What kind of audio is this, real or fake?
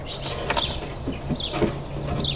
real